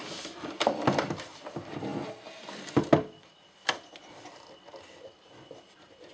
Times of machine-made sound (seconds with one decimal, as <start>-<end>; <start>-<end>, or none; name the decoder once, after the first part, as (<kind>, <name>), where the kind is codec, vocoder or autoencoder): none